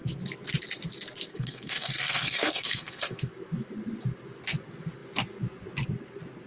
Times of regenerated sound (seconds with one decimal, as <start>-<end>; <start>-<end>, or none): 1.3-3.3